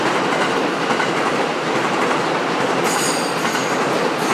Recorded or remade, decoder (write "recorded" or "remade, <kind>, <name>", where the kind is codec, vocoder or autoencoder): recorded